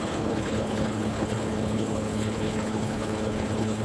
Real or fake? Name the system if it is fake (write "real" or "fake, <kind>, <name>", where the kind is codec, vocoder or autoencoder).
fake, codec, HILCodec